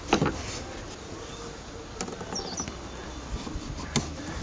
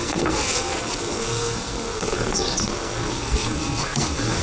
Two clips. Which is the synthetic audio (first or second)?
second